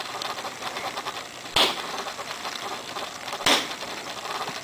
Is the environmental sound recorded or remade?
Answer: recorded